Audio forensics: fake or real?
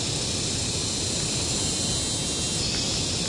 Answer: real